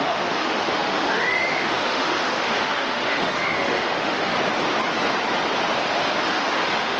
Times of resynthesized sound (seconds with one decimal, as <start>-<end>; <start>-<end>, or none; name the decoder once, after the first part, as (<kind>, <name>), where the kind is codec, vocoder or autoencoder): 0.0-4.3 (autoencoder, DAC-VAE); 6.2-7.0